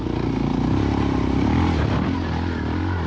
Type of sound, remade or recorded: recorded